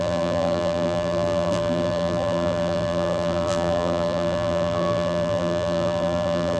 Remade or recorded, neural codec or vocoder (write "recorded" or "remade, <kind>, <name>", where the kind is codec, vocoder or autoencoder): remade, vocoder, BigVGAN v2